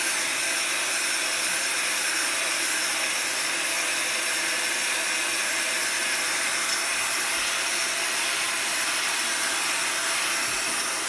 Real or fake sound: real